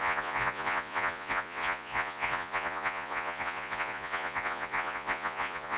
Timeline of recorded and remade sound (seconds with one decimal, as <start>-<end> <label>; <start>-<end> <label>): 0.0-5.8 remade